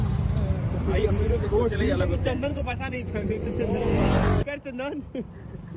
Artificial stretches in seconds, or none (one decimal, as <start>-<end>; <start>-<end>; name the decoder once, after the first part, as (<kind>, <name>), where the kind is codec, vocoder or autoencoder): 0.9-4.4 (vocoder, Vocos)